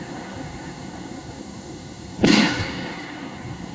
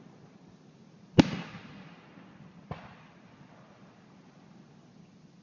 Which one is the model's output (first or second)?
first